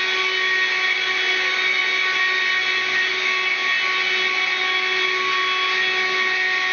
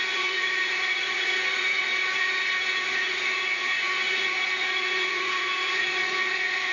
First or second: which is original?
first